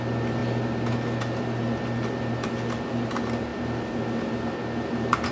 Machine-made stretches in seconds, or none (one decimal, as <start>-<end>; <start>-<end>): none